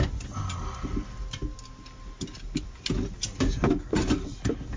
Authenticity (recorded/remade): recorded